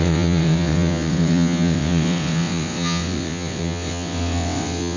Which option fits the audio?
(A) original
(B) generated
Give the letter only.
B